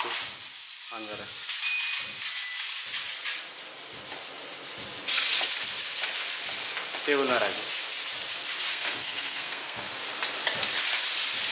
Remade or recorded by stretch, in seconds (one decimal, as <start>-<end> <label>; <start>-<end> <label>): 0.0-8.7 recorded; 8.7-9.9 remade; 9.9-11.5 recorded